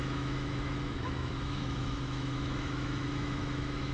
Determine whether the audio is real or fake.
fake